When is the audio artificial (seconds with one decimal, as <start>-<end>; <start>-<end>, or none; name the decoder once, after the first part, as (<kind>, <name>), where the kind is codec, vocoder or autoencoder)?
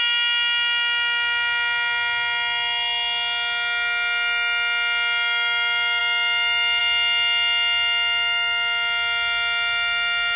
none